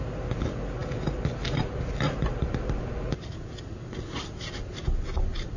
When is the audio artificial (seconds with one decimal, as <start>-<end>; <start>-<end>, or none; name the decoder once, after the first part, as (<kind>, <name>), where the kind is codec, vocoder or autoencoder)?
none